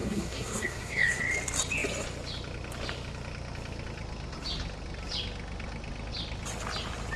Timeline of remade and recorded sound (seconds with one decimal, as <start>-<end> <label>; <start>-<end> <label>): 0.0-1.2 remade; 1.2-7.2 recorded